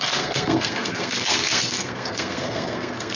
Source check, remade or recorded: remade